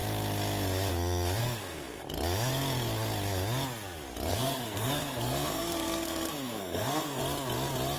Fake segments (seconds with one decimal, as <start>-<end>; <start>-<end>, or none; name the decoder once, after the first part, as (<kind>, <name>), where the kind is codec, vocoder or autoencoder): 1.4-2.0 (codec, SNAC); 4.3-7.2